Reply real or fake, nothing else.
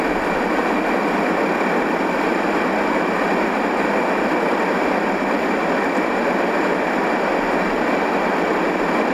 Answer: real